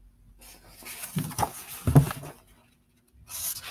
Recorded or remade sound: recorded